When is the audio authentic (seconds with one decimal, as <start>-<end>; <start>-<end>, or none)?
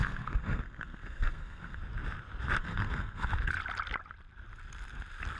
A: 1.8-2.6; 3.3-5.4